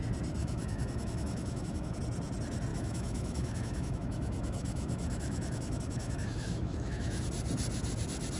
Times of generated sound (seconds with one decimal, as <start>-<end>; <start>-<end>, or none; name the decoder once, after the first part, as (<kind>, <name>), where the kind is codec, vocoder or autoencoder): 0.4-2.0 (autoencoder, DAC-VAE); 2.7-7.2